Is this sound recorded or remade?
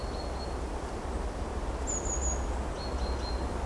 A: recorded